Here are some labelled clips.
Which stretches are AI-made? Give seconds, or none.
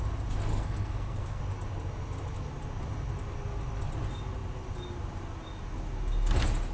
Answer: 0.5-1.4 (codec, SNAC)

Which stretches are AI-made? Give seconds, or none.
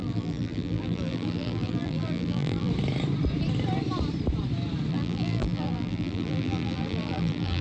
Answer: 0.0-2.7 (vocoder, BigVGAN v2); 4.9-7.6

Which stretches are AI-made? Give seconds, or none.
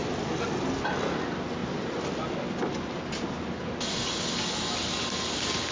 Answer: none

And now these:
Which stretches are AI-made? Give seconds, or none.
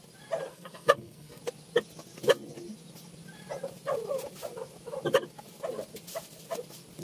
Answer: 0.5-1.4 (codec, SNAC)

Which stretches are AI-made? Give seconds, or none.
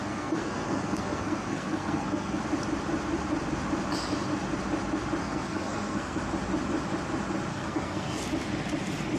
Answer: 0.0-2.4 (codec, SNAC); 5.2-6.2; 7.5-8.2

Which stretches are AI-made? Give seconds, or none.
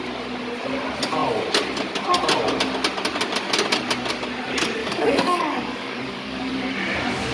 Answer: 4.8-6.5 (codec, DAC)